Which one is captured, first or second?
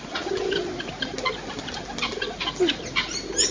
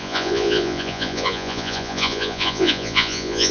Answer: first